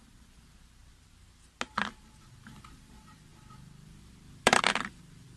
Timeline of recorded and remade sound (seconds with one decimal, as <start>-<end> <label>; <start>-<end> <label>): 0.0-0.8 remade; 0.8-2.0 recorded; 2.0-5.4 remade